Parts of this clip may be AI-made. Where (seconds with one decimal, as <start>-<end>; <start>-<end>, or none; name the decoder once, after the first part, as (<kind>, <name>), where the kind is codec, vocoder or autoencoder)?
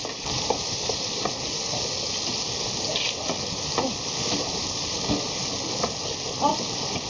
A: 0.0-1.8 (vocoder, BigVGAN v2)